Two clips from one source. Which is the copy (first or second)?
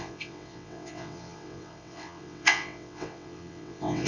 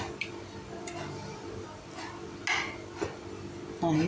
first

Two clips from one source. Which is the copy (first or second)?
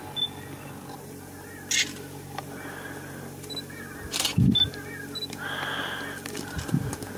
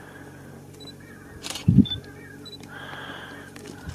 second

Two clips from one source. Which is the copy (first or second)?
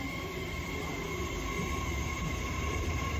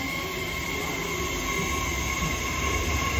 first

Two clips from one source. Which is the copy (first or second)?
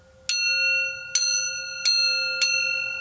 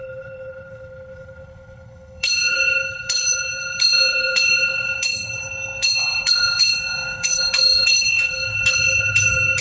second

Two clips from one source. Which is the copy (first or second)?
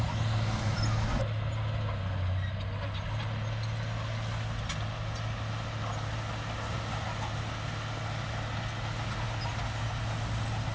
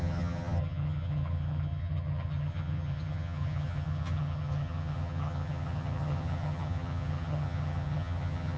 second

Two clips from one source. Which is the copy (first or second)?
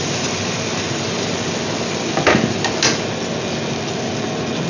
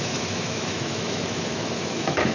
second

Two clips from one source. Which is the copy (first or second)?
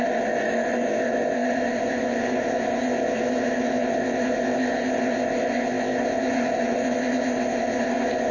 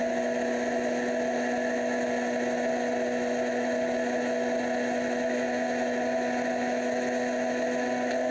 first